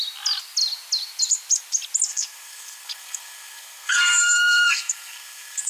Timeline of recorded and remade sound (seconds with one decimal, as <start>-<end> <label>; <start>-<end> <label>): 0.0-2.1 recorded; 2.1-5.7 remade